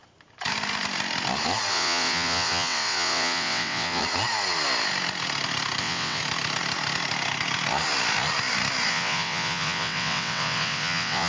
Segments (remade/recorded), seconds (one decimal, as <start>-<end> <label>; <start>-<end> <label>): 0.0-1.7 recorded; 1.7-4.0 remade; 4.0-5.8 recorded; 5.8-6.2 remade; 6.2-8.9 recorded; 8.9-11.3 remade